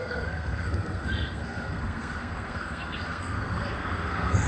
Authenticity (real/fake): fake